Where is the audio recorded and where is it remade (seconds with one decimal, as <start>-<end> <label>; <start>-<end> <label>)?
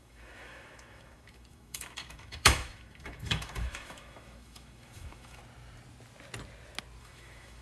0.0-5.4 remade; 5.4-7.0 recorded; 7.0-7.6 remade